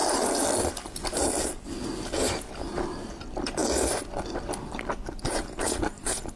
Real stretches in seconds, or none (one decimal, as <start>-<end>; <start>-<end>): 0.0-6.4